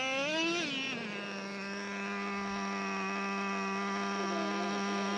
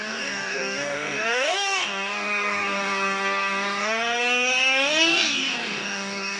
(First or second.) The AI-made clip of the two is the second